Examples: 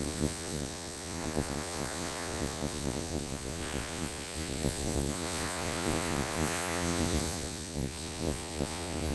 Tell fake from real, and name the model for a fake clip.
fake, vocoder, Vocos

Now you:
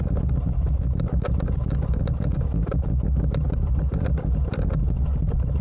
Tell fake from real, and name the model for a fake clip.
real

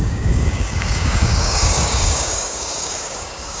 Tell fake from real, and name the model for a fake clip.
fake, codec, DAC